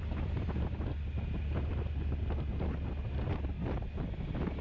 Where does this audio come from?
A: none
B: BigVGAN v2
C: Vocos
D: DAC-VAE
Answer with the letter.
A